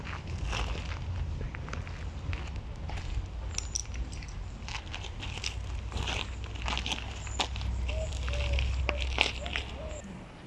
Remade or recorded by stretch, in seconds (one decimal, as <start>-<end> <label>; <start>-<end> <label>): 0.0-3.8 recorded; 3.8-8.8 remade; 8.8-10.5 recorded